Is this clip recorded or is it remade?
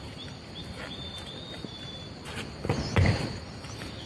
recorded